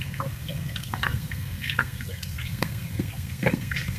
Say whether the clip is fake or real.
fake